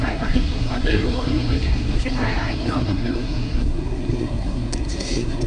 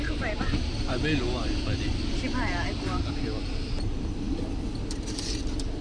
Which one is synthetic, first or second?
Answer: first